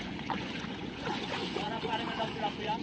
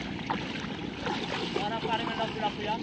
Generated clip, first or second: first